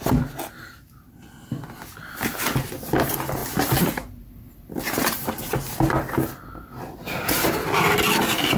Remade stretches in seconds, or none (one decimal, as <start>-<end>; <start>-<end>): none